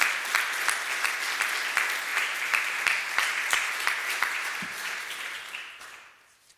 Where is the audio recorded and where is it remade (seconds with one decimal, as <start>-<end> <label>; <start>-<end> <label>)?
0.0-2.1 recorded; 2.1-6.1 remade; 6.1-6.6 recorded